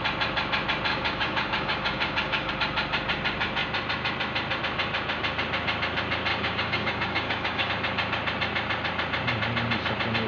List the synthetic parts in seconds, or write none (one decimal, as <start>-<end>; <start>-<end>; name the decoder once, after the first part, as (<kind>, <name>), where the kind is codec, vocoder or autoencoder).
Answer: 0.9-2.5 (codec, DAC); 6.3-7.7